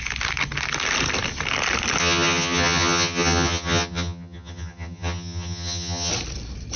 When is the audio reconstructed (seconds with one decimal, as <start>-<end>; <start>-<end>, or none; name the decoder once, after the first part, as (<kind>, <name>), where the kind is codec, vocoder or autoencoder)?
2.0-6.1 (vocoder, HiFi-GAN)

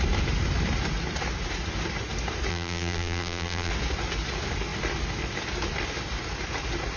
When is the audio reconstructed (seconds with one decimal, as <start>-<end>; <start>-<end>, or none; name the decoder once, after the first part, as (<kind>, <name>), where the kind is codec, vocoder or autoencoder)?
2.5-3.7 (vocoder, BigVGAN v2)

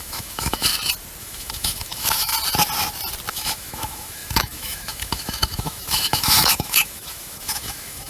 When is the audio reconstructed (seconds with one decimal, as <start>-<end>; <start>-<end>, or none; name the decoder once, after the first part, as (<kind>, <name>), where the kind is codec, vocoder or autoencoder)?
0.0-0.7 (autoencoder, DAC-VAE); 1.2-2.3; 3.3-8.1

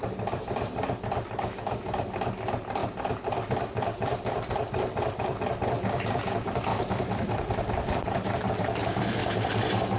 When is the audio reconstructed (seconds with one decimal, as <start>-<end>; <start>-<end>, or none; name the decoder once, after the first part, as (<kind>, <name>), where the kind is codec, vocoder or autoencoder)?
0.0-9.2 (vocoder, BigVGAN v2)

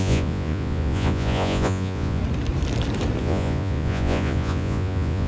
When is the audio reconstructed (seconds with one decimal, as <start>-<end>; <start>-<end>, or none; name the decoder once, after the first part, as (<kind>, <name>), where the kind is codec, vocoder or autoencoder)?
0.0-2.2 (vocoder, Vocos); 3.2-5.3

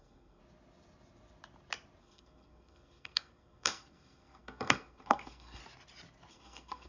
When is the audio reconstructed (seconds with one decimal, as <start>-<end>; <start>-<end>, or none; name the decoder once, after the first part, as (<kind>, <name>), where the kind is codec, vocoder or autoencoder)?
0.0-0.4 (codec, SNAC); 2.0-5.6; 6.3-6.9

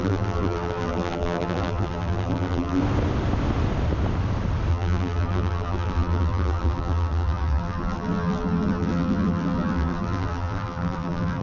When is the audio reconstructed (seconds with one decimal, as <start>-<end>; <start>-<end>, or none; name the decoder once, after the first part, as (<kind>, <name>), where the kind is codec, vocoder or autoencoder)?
0.0-2.8 (vocoder, BigVGAN v2); 4.7-11.4